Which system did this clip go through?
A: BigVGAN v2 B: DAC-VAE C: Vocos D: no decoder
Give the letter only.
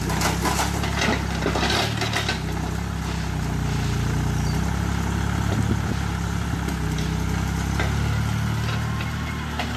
D